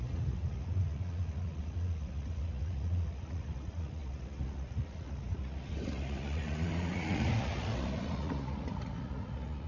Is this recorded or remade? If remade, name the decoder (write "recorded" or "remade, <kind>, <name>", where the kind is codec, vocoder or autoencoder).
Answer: remade, vocoder, Vocos